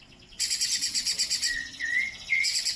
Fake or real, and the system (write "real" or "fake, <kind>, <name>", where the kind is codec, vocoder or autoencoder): fake, vocoder, WaveNeXt